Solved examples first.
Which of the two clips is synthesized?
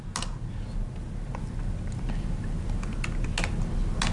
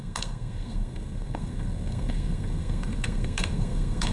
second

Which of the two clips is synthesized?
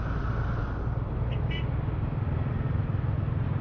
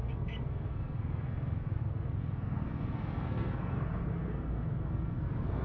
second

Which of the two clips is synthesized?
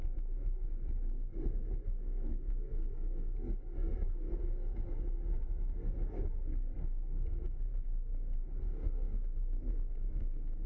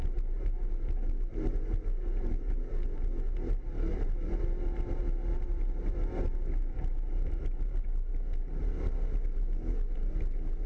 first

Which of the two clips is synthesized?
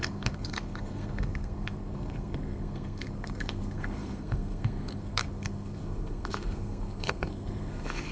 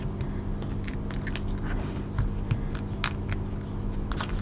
first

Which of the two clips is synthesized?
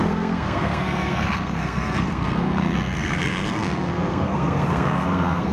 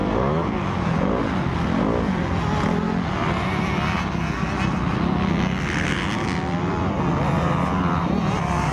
first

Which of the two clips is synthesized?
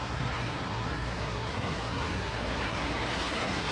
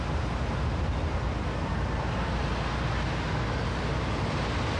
first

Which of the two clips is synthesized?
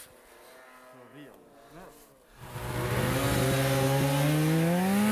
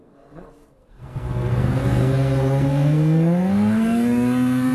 second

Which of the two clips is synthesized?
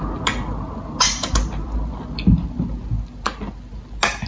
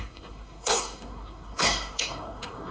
second